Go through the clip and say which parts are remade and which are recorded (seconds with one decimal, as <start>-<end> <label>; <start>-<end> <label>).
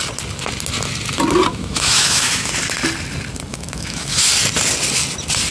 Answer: 0.0-1.5 recorded; 1.5-2.5 remade; 2.5-3.5 recorded; 3.5-4.3 remade; 4.3-5.5 recorded